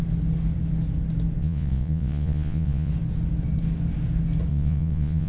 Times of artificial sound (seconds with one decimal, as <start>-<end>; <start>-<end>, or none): 1.4-2.9; 4.5-5.3